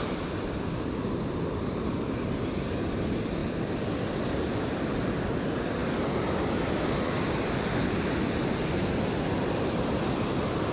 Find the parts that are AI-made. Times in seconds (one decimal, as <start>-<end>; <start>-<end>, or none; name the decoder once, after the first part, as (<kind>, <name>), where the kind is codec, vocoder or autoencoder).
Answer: none

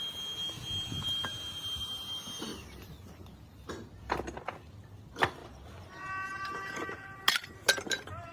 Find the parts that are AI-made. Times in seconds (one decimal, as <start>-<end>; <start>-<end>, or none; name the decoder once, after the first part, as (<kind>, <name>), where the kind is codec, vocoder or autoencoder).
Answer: none

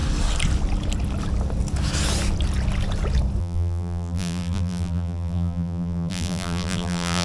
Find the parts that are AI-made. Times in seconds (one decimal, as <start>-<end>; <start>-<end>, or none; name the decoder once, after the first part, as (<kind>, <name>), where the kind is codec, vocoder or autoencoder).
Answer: 3.4-7.2 (vocoder, BigVGAN v2)

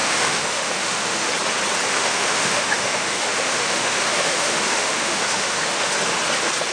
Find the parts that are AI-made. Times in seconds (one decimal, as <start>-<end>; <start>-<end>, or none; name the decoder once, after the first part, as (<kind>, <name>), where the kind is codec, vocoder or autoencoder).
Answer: 0.0-1.3 (autoencoder, DAC-VAE); 1.9-5.9

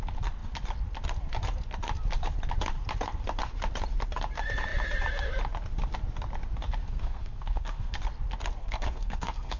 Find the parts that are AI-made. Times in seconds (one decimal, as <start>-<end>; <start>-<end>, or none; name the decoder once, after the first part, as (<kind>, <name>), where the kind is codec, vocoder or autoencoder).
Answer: 6.8-8.0 (codec, SNAC); 8.6-9.6

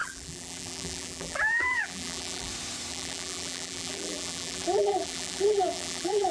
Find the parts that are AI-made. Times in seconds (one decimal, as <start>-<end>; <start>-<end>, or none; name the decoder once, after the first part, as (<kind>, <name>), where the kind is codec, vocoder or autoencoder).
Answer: 0.0-2.5 (vocoder, BigVGAN v2); 2.9-6.3

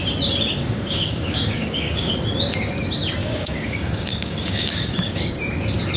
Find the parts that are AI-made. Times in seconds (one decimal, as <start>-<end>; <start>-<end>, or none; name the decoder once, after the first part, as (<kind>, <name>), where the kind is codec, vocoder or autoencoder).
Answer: 0.6-2.1 (codec, DAC); 3.2-5.4

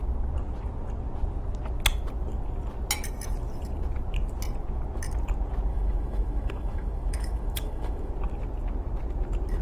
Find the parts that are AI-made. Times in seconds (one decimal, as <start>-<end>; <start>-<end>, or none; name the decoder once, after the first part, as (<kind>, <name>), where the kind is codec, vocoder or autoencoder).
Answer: 5.7-8.1 (autoencoder, DAC-VAE)